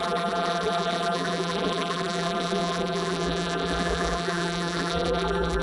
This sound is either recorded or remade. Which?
remade